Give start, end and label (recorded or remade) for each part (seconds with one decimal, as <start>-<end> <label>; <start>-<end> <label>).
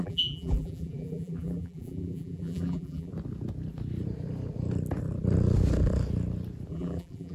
0.0-3.1 remade; 3.1-6.7 recorded; 6.7-7.3 remade